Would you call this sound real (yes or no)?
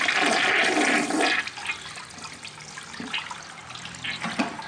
yes